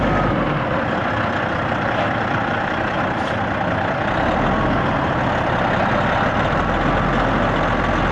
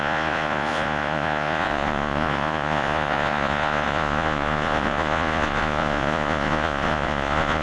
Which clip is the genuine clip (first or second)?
first